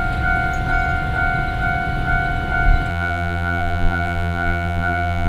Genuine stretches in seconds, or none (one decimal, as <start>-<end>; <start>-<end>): 0.0-2.9